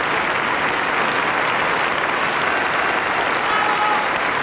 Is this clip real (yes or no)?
yes